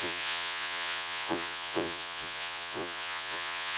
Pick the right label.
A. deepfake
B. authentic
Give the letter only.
A